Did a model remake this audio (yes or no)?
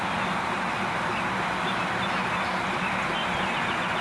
no